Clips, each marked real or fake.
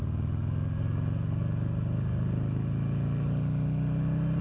real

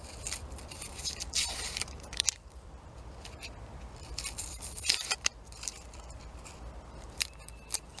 fake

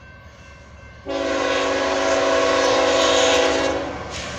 real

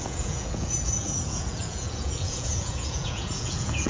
fake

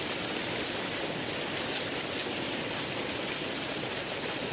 real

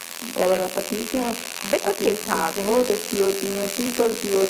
fake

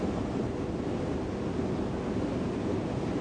real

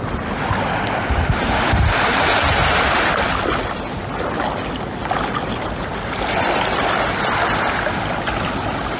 real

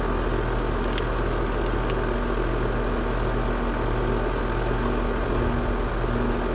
real